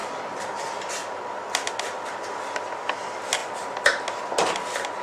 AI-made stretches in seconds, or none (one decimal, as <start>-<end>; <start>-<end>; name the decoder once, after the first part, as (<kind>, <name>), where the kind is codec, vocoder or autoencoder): 0.0-0.6 (vocoder, BigVGAN v2); 1.0-2.9